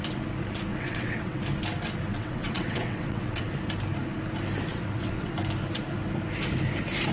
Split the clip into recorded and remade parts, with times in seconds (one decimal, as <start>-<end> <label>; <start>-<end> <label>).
0.0-0.7 recorded; 0.7-1.4 remade; 1.4-2.1 recorded; 2.1-3.5 remade; 3.5-4.7 recorded; 4.7-5.3 remade; 5.3-7.1 recorded